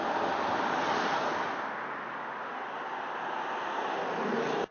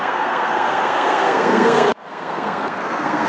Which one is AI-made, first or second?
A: second